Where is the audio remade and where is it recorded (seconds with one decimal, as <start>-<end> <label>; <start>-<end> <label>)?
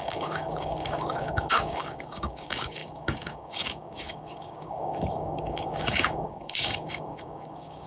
0.0-7.9 remade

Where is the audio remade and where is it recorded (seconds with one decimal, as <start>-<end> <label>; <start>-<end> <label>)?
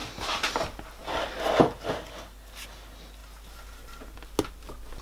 0.0-5.0 recorded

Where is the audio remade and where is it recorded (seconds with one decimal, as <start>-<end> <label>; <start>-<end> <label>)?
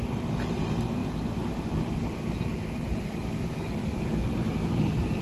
0.0-5.2 recorded